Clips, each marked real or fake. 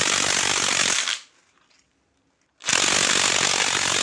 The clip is real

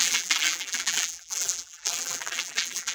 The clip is fake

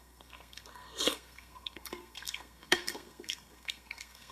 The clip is fake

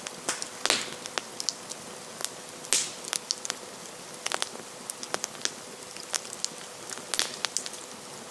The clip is real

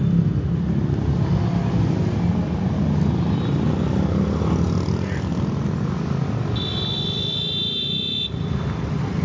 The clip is real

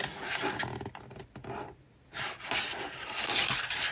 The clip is real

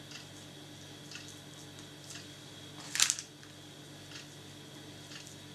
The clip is real